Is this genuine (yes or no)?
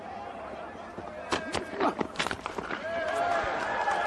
yes